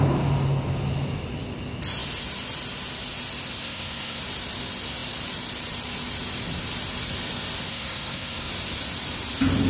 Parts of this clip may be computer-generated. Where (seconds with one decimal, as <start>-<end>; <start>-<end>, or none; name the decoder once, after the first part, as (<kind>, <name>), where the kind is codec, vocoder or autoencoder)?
3.6-4.2 (codec, SNAC); 7.7-8.5